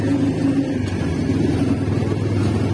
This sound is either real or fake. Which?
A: real